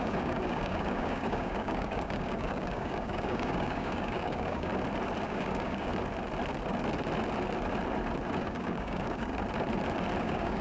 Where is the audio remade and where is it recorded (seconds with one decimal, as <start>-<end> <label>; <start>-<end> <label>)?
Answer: 0.0-4.7 remade; 4.7-5.3 recorded; 5.3-5.9 remade; 5.9-8.3 recorded; 8.3-9.3 remade; 9.3-10.2 recorded; 10.2-10.6 remade